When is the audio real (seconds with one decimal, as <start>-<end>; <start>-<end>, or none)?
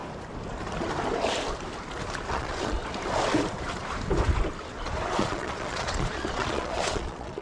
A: 0.0-2.3; 2.8-5.1